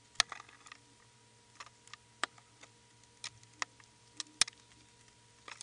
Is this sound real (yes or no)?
yes